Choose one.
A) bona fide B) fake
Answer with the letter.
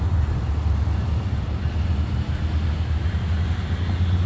A